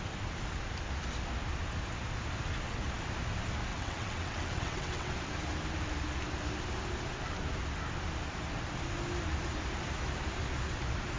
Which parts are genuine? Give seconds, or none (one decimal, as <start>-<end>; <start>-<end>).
0.0-3.7; 5.1-11.2

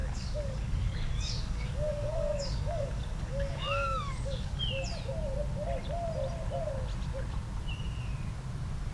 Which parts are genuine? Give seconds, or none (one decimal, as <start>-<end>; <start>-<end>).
4.6-8.9

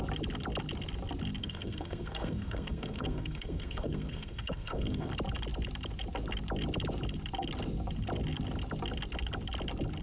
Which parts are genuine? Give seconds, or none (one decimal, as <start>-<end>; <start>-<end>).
0.0-1.4; 5.1-10.0

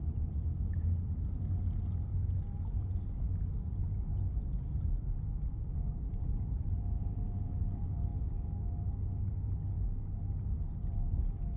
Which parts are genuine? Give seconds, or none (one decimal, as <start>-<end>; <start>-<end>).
2.8-4.3; 8.1-10.2